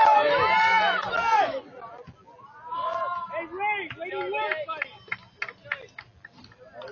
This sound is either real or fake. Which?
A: real